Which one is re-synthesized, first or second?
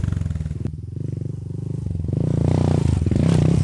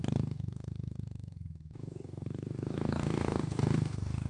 second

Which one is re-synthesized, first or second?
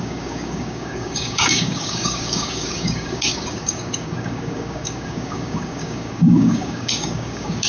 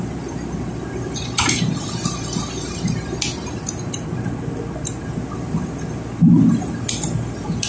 first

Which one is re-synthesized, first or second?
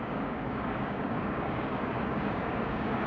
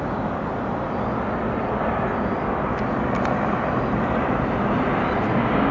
first